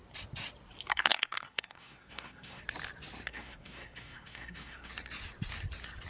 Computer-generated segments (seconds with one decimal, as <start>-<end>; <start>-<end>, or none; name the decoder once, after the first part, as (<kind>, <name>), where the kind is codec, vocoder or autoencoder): 0.9-2.6 (codec, SNAC); 3.3-4.9